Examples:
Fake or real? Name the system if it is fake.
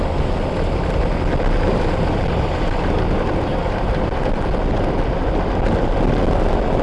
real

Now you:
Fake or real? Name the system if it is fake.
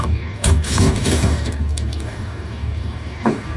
fake, codec, DAC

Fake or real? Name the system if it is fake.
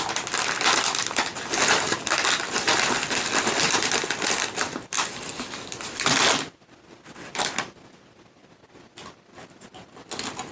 real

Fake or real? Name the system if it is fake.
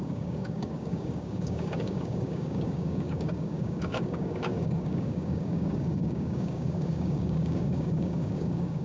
fake, codec, DAC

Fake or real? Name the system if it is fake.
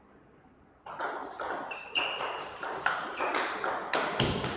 real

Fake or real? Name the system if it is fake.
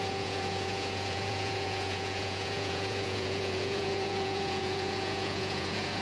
fake, vocoder, Vocos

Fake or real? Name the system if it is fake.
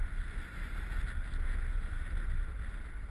real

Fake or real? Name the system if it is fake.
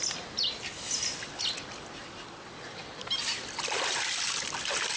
real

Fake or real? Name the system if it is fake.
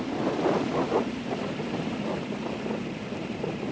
real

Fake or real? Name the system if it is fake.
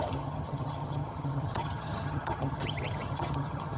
fake, vocoder, HiFi-GAN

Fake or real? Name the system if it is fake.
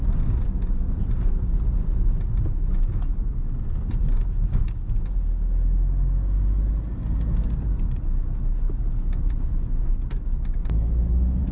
real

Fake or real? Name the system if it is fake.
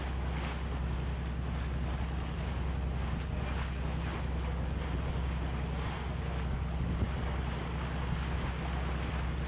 real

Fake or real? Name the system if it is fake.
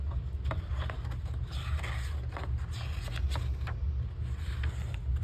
real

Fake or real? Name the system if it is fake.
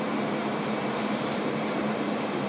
fake, vocoder, BigVGAN v2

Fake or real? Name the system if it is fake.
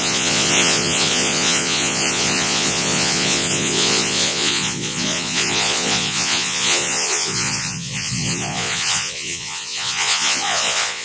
fake, vocoder, Vocos